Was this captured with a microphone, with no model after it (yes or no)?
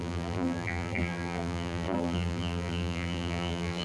no